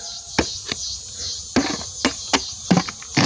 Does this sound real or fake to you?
real